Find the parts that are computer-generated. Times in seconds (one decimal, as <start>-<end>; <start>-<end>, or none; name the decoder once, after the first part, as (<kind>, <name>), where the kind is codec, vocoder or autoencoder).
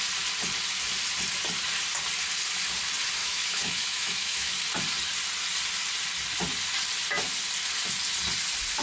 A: 3.2-4.6 (autoencoder, DAC-VAE)